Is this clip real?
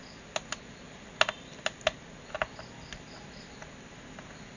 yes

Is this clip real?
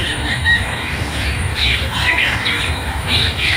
no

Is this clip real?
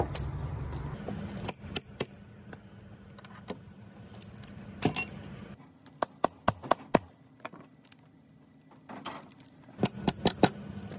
yes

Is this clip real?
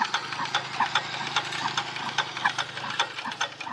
yes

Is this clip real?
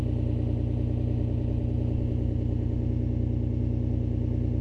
yes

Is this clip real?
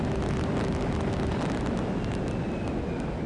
yes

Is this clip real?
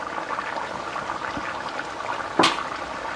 yes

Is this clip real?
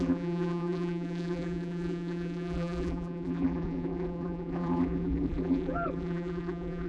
no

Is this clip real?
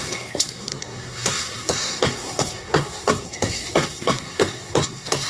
no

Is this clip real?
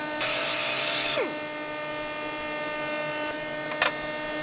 yes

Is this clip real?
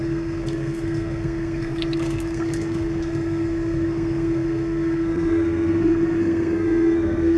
no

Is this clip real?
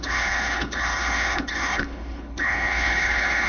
no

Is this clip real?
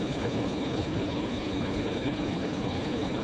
no